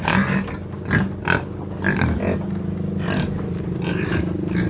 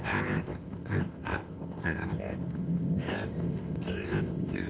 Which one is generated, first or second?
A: second